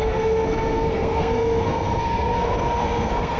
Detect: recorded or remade remade